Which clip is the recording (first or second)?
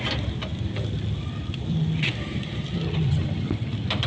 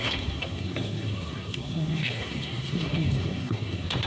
first